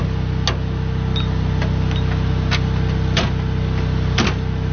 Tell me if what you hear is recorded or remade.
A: recorded